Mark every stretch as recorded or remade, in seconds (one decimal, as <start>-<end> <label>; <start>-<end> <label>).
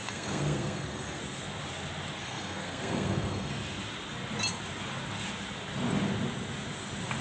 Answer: 0.0-1.2 remade; 1.2-2.2 recorded; 2.2-3.5 remade; 3.5-7.2 recorded